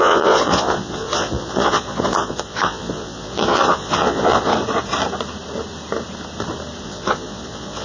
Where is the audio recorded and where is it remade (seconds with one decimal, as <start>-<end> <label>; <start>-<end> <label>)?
0.0-4.5 remade; 4.5-6.8 recorded; 6.8-7.8 remade